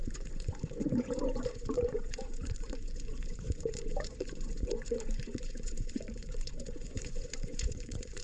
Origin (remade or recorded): remade